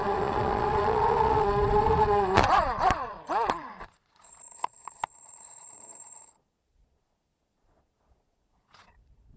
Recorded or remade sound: remade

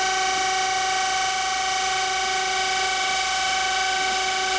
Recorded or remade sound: recorded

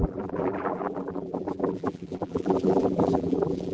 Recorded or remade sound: remade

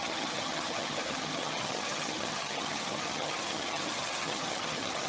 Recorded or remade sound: remade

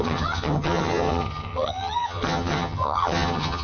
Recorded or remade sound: remade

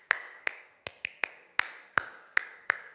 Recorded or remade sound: remade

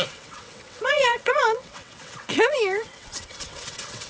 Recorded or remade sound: remade